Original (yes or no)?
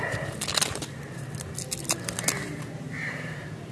yes